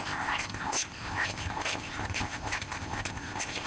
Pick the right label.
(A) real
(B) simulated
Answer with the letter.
B